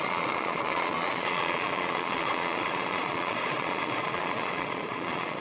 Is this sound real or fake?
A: fake